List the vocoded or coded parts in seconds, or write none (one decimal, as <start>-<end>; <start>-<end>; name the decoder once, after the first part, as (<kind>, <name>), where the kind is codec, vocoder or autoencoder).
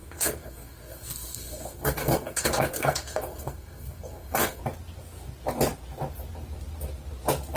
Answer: 0.0-4.6 (codec, SNAC)